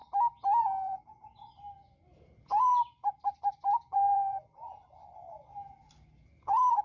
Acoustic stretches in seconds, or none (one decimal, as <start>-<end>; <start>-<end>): 0.0-0.6